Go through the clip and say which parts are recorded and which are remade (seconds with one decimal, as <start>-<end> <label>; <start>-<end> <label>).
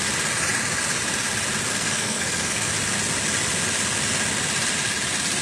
0.0-1.7 recorded; 1.7-2.7 remade; 2.7-5.4 recorded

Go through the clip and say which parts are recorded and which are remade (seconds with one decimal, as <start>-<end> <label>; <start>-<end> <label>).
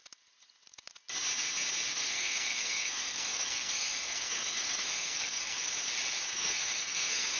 0.0-1.9 recorded; 1.9-5.7 remade; 5.7-6.3 recorded; 6.3-7.4 remade